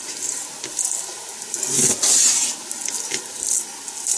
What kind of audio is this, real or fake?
real